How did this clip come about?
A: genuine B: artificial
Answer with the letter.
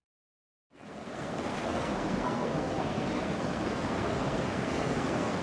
B